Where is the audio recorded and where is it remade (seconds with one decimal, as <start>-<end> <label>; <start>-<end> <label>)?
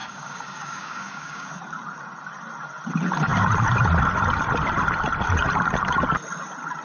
0.0-1.5 remade; 1.5-6.8 recorded